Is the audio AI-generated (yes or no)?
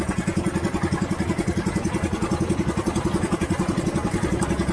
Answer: no